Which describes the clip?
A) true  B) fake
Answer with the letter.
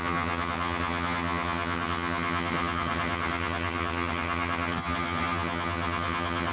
B